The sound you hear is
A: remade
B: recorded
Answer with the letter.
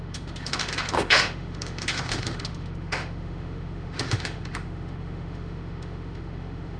A